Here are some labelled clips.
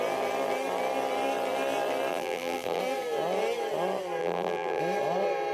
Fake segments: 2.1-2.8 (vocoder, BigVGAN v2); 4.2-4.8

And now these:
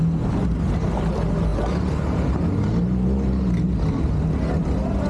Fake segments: none

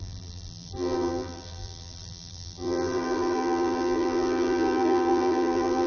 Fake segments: 0.0-5.9 (vocoder, BigVGAN v2)

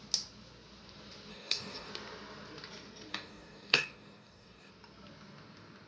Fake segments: 1.3-1.9 (codec, DAC); 3.1-4.7

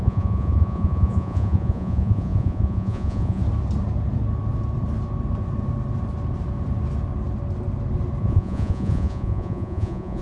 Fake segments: 0.0-3.4 (vocoder, Vocos); 8.2-10.2